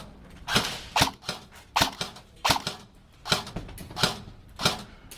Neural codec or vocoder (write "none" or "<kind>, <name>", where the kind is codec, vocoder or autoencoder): none